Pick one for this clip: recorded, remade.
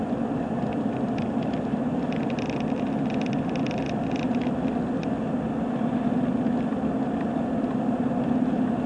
recorded